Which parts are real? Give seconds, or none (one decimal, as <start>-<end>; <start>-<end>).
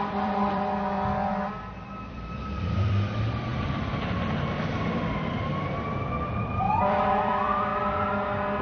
1.3-1.8; 7.7-8.6